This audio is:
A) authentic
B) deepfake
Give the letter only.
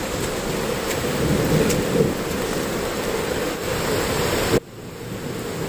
A